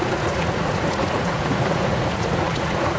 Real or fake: fake